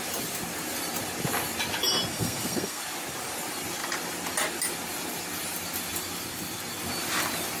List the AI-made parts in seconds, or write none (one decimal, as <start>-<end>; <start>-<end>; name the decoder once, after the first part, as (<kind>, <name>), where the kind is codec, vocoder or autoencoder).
2.1-2.8 (codec, SNAC)